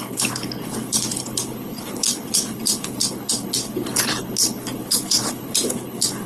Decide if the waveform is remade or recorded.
remade